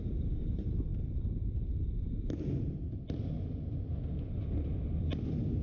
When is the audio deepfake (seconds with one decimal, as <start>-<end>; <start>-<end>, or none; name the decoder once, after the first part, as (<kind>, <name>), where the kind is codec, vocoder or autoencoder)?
none